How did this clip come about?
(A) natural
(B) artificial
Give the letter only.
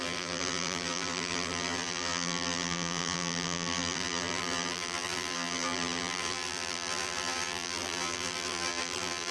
B